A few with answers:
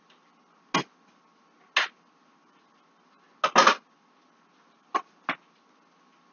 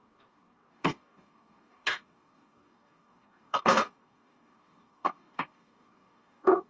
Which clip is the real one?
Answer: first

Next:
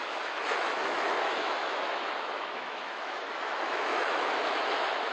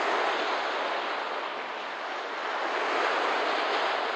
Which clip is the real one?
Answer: second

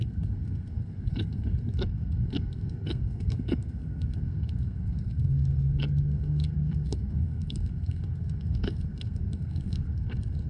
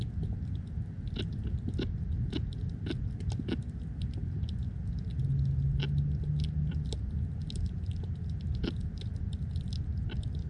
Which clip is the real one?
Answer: second